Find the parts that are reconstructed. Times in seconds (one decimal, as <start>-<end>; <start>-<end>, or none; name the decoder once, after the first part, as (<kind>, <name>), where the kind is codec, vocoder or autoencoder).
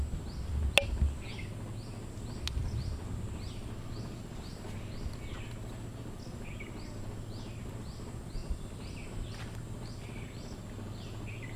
8.4-9.1 (vocoder, BigVGAN v2)